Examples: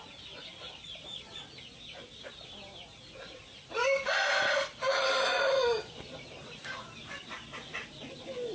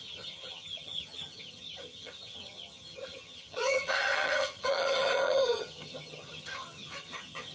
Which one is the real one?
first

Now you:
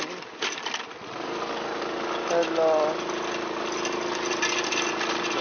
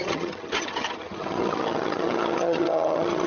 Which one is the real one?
first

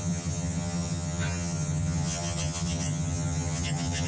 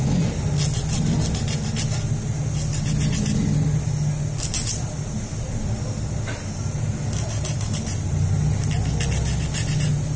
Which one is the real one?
second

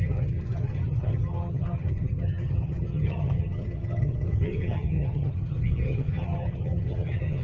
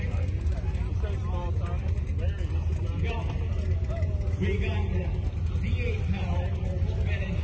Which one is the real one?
second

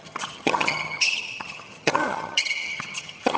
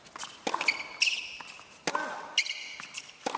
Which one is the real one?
second